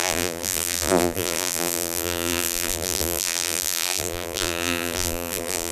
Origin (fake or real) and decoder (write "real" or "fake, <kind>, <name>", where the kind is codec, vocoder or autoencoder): fake, vocoder, BigVGAN v2